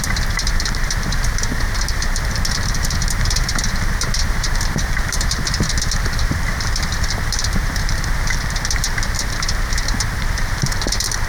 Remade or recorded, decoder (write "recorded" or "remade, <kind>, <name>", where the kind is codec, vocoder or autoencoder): remade, vocoder, BigVGAN v2